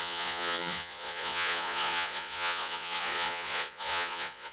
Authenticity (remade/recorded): remade